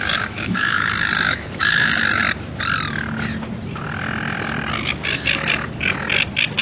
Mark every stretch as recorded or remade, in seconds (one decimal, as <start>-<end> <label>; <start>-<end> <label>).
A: 0.0-2.2 remade; 2.2-6.6 recorded